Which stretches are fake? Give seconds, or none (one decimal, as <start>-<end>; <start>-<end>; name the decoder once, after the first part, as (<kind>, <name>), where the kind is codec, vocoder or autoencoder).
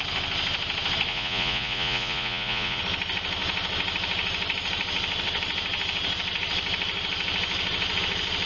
1.1-2.8 (vocoder, Vocos)